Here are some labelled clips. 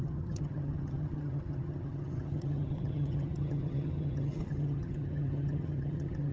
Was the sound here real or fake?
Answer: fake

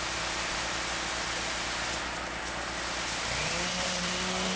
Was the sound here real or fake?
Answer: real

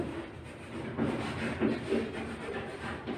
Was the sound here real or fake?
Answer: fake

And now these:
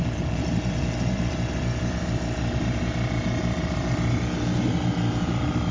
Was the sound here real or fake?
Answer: real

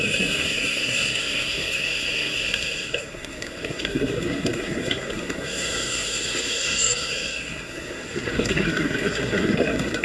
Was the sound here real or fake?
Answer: fake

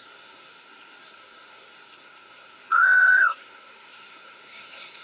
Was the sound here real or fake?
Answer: fake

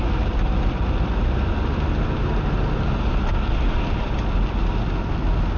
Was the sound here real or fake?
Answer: real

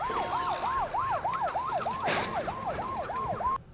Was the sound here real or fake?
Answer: real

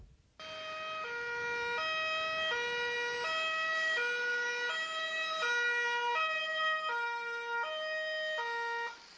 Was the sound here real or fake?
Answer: real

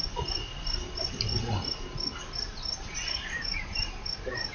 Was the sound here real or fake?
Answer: real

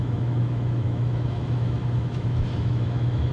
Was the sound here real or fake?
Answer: fake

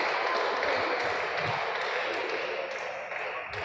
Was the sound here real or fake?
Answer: real